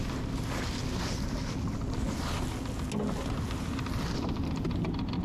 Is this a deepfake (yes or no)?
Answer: no